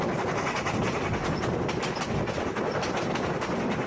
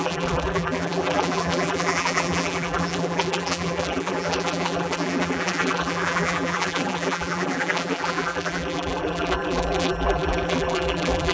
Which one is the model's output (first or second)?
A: second